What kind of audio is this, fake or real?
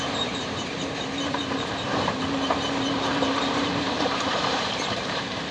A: fake